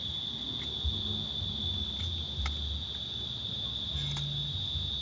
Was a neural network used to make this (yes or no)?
no